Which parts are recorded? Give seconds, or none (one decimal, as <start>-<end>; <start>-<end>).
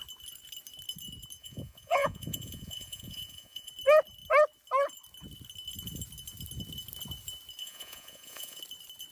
0.0-1.4; 3.7-7.6; 8.6-9.1